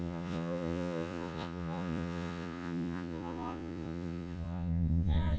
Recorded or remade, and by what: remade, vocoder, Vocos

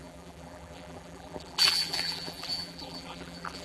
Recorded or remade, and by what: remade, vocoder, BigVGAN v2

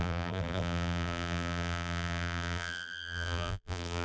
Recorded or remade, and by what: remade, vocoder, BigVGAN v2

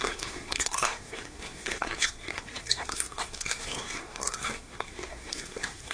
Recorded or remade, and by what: remade, codec, SNAC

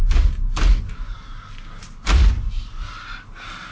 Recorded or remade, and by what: recorded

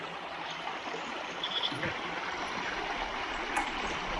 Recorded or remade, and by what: remade, vocoder, BigVGAN v2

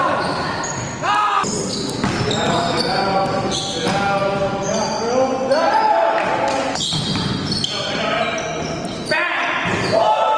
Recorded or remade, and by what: recorded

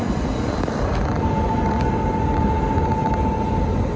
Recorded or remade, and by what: recorded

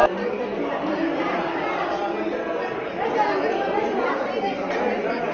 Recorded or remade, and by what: recorded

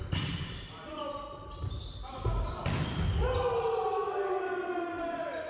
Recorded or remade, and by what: recorded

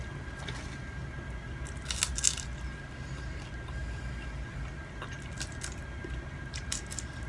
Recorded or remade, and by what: recorded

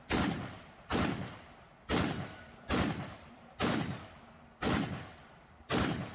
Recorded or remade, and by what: remade, vocoder, BigVGAN v2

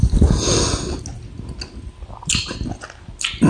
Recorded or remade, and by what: recorded